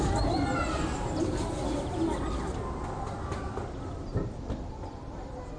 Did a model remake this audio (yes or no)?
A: no